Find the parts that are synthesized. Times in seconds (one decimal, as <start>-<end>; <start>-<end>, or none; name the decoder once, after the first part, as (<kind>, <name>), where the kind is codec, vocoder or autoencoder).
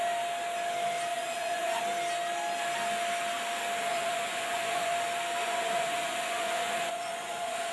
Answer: 1.1-1.8 (vocoder, Vocos); 3.9-4.9; 5.4-7.7